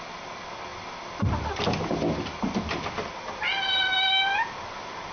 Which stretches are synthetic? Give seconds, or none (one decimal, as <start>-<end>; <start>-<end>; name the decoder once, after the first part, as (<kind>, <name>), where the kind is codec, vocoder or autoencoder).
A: none